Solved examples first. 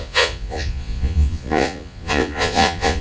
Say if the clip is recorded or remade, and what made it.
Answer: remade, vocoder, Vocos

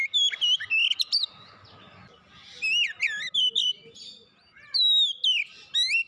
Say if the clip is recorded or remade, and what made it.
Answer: recorded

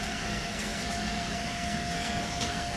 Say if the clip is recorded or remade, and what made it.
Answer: remade, codec, SNAC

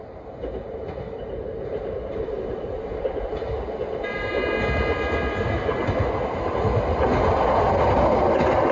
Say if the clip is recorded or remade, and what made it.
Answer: recorded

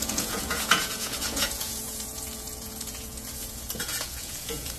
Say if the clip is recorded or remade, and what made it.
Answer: remade, vocoder, Vocos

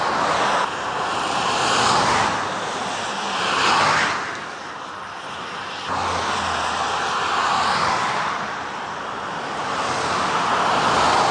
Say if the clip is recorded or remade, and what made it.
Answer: recorded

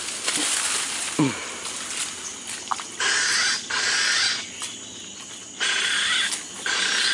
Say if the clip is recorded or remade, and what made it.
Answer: recorded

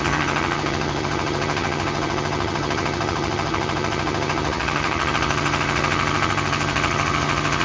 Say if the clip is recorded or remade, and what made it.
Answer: remade, vocoder, HiFi-GAN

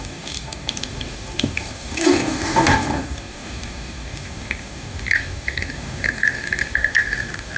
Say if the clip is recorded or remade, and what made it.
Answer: remade, codec, DAC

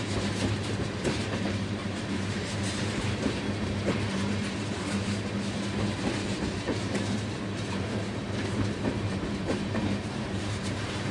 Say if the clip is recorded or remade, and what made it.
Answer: remade, vocoder, BigVGAN v2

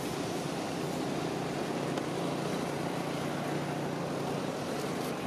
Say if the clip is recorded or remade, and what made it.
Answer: recorded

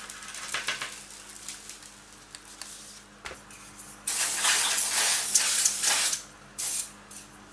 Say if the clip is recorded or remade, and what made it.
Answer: recorded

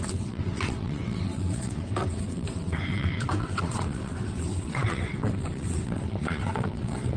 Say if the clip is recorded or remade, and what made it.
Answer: remade, vocoder, WaveNeXt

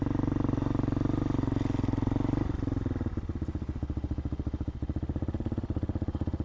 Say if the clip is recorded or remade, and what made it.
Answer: recorded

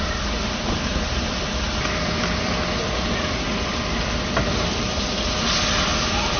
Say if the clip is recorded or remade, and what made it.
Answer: remade, vocoder, BigVGAN v2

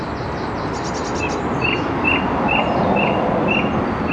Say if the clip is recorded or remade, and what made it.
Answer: recorded